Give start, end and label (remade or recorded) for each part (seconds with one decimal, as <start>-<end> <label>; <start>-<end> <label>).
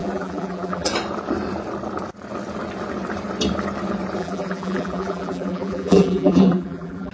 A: 0.0-0.9 remade; 0.9-4.2 recorded; 4.2-7.1 remade